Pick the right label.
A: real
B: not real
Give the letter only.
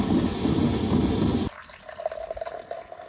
A